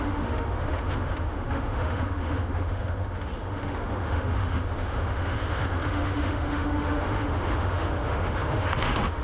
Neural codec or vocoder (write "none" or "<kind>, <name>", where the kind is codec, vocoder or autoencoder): autoencoder, DAC-VAE